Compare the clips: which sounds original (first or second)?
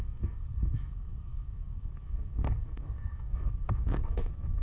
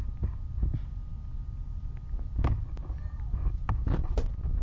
second